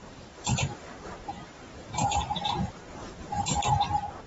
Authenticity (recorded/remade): remade